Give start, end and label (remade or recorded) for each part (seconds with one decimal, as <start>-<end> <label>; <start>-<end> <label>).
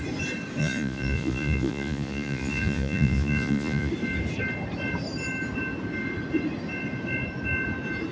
0.0-0.6 recorded; 0.6-3.9 remade; 3.9-8.1 recorded